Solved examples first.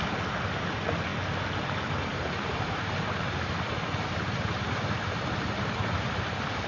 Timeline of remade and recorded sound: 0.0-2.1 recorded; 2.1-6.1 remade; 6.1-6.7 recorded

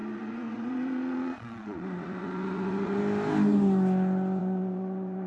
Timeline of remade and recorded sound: 0.0-3.0 remade; 3.0-4.4 recorded; 4.4-5.3 remade

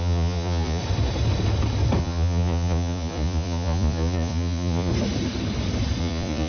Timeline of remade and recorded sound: 0.0-0.8 remade; 0.8-2.0 recorded; 2.0-4.9 remade; 4.9-6.0 recorded; 6.0-6.5 remade

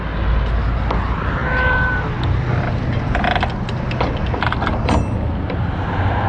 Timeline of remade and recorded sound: 0.0-6.3 recorded